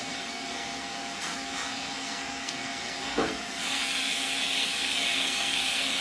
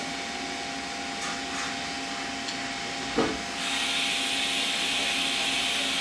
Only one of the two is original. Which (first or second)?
second